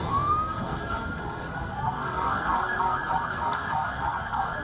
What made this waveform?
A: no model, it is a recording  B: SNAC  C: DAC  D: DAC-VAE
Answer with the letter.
B